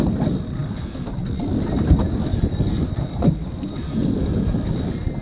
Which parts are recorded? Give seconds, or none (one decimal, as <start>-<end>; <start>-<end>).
0.0-5.2